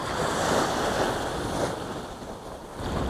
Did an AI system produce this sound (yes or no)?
no